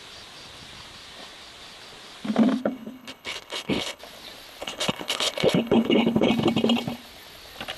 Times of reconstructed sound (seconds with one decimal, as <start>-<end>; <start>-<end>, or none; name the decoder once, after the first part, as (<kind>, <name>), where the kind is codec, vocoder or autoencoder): 2.6-4.0 (codec, HILCodec); 4.6-6.3